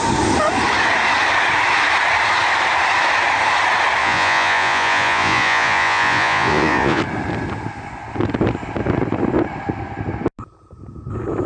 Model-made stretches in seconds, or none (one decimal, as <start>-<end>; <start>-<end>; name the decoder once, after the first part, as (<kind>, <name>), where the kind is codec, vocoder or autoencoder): 4.0-7.0 (vocoder, Vocos)